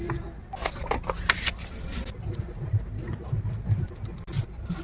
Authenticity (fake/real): real